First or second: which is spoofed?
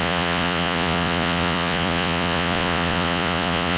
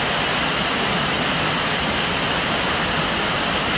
first